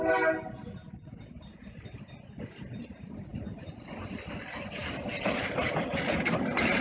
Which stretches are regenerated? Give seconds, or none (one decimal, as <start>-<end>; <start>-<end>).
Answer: 4.8-5.6